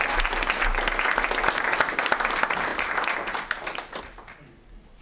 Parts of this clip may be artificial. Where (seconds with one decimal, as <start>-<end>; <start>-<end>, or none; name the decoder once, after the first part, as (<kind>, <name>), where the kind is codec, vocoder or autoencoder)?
none